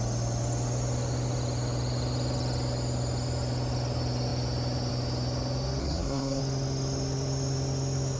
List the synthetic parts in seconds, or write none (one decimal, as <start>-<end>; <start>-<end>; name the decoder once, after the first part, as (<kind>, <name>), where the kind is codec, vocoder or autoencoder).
5.8-6.4 (codec, SNAC)

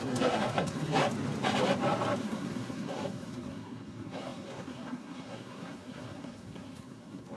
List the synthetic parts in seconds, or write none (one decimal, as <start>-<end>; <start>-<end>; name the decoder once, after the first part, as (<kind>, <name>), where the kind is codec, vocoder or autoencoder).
0.0-1.0 (codec, SNAC); 2.2-7.4

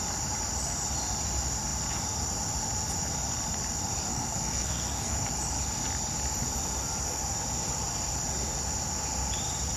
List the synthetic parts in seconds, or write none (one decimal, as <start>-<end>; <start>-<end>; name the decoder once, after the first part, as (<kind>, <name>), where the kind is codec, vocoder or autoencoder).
4.1-5.1 (codec, SNAC)

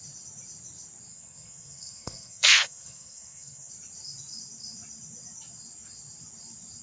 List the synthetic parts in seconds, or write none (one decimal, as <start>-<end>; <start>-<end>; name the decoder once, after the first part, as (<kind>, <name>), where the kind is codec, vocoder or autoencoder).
1.1-3.7 (codec, SNAC)

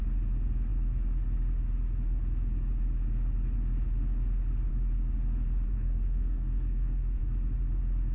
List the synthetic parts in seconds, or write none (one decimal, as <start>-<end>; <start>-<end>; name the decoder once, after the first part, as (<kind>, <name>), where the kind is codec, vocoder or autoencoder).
5.7-7.2 (codec, SNAC)

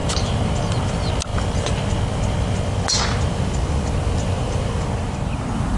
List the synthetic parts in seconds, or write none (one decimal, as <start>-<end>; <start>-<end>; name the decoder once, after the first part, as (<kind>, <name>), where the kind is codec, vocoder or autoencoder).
none